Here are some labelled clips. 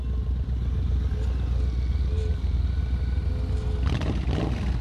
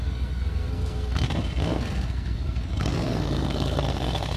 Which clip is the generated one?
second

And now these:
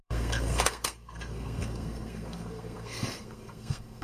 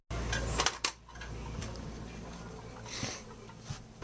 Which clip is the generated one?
first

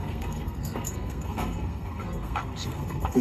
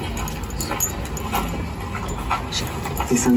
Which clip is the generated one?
first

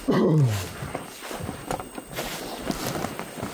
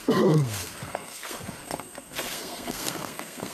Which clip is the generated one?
second